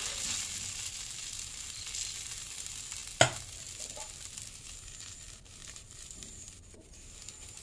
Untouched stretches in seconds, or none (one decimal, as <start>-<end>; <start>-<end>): 0.0-5.6; 6.9-7.6